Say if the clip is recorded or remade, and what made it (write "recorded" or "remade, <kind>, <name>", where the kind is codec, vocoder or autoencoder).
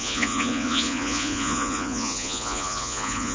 remade, vocoder, Vocos